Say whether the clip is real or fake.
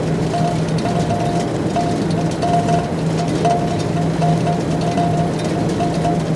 real